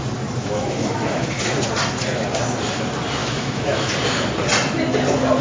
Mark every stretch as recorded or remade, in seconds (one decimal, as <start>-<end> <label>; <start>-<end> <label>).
0.0-0.4 recorded; 0.4-1.6 remade; 1.6-3.2 recorded; 3.2-3.9 remade; 3.9-5.4 recorded